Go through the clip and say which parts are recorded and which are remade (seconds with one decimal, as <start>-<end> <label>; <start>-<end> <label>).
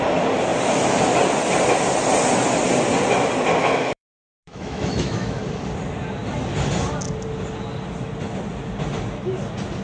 0.0-3.6 recorded; 3.6-5.4 remade; 5.4-9.8 recorded